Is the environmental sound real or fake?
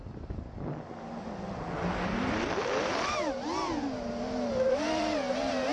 real